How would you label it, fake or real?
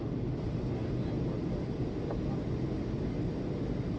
real